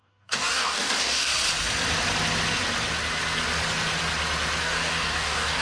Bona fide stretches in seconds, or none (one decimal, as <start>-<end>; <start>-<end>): 1.3-4.6